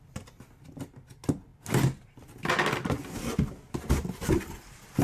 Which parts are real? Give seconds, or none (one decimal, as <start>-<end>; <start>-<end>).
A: 0.0-5.0

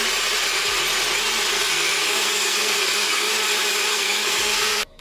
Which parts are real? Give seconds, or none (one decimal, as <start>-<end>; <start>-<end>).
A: 0.0-1.5; 3.3-3.9